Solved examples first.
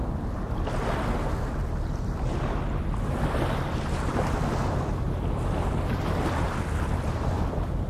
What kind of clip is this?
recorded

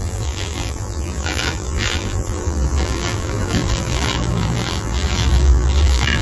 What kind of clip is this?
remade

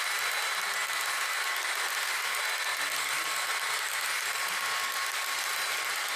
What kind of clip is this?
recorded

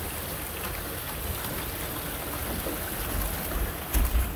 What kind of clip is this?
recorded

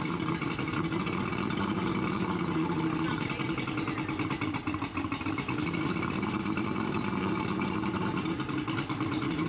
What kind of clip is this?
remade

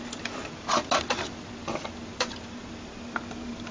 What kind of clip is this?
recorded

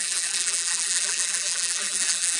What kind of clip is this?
remade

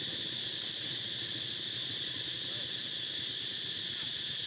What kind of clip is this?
remade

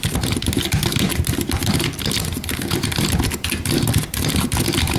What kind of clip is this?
remade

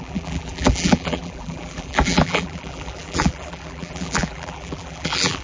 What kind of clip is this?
remade